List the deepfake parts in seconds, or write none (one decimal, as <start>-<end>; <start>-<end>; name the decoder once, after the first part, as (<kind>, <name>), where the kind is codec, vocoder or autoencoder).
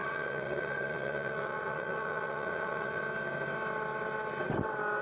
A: 0.0-3.0 (vocoder, Vocos)